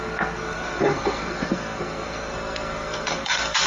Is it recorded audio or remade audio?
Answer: remade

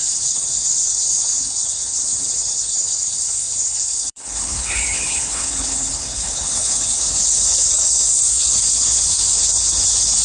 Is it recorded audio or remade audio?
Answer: remade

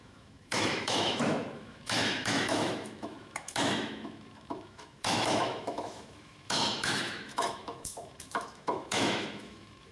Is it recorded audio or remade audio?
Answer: remade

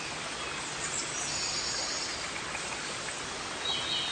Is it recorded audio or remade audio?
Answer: recorded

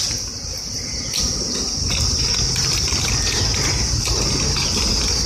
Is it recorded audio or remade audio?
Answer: recorded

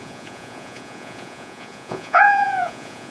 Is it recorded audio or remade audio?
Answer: remade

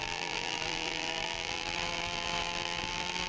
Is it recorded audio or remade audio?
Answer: remade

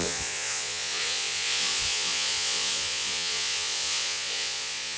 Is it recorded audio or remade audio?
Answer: remade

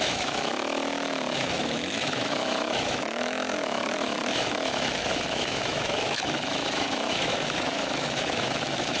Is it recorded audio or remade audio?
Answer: remade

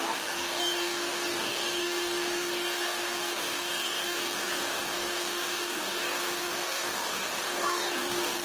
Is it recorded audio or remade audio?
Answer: remade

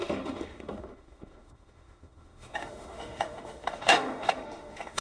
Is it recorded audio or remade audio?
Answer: remade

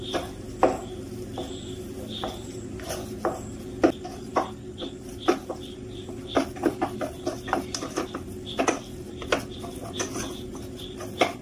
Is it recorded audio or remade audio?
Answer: recorded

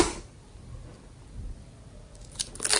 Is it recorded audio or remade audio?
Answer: recorded